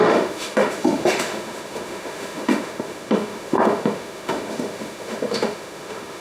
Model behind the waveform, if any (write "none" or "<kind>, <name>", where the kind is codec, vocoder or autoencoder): autoencoder, DAC-VAE